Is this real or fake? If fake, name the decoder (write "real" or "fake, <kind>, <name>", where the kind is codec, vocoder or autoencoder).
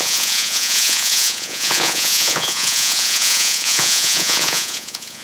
fake, vocoder, Vocos